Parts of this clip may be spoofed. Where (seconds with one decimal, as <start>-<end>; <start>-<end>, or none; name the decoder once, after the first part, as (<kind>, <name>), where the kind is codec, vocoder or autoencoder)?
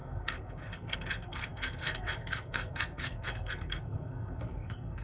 0.0-5.0 (codec, SNAC)